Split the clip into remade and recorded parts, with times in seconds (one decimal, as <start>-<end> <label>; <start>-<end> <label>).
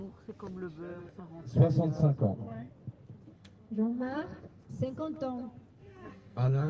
0.0-1.0 recorded; 1.0-1.5 remade; 1.5-2.0 recorded; 2.0-2.7 remade; 2.7-3.3 recorded; 3.3-4.7 remade; 4.7-5.7 recorded; 5.7-6.7 remade